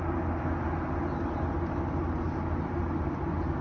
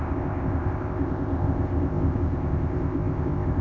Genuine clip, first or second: first